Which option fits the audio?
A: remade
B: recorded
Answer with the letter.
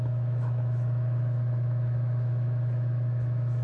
A